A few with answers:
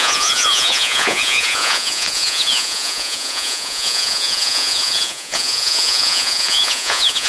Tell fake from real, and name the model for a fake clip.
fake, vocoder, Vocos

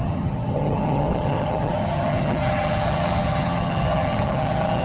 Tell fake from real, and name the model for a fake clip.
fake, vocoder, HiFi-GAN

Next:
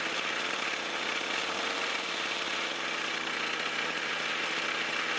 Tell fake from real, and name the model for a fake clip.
real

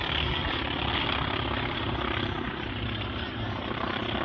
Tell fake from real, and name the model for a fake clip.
real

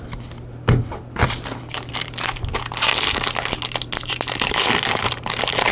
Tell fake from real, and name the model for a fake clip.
real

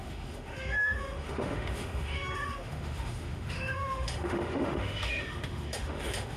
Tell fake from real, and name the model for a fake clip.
fake, autoencoder, DAC-VAE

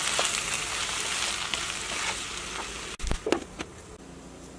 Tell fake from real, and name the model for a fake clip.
real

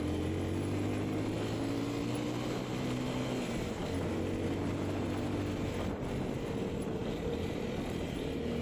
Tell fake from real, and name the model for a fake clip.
real